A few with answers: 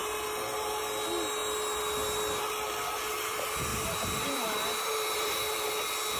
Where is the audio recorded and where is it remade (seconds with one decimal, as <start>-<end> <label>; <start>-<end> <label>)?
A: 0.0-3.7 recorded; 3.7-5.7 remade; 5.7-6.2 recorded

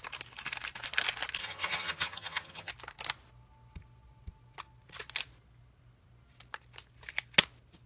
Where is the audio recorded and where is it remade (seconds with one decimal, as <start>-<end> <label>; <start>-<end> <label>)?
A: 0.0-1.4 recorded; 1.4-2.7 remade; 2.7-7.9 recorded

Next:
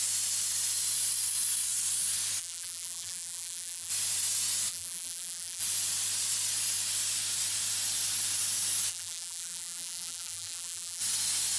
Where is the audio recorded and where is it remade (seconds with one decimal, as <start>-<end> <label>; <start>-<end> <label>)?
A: 0.0-2.4 recorded; 2.4-3.9 remade; 3.9-4.7 recorded; 4.7-5.6 remade; 5.6-8.9 recorded; 8.9-11.0 remade; 11.0-11.6 recorded

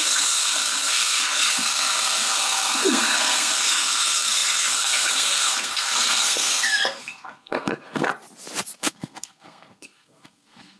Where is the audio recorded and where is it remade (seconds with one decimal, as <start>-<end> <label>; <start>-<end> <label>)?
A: 0.0-8.1 remade; 8.1-8.8 recorded; 8.8-10.8 remade

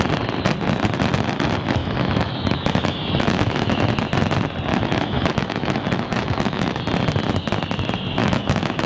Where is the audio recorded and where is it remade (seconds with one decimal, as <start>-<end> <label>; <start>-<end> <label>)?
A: 0.0-1.8 recorded; 1.8-3.9 remade; 3.9-4.7 recorded; 4.7-6.8 remade; 6.8-8.2 recorded; 8.2-8.9 remade

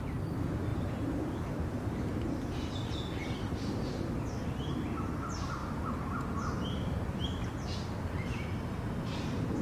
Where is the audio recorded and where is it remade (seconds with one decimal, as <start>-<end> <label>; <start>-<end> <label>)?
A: 0.0-0.7 recorded; 0.7-2.4 remade; 2.4-5.6 recorded; 5.6-7.2 remade; 7.2-9.6 recorded